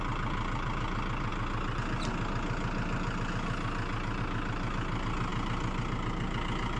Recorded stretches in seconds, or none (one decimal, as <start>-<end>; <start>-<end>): 0.0-6.8